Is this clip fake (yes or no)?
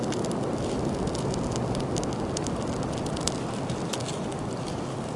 no